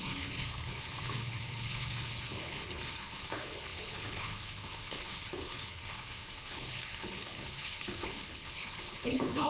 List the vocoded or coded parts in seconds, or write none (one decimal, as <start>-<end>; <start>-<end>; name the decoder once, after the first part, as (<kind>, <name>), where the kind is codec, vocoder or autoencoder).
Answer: 0.0-9.5 (codec, HILCodec)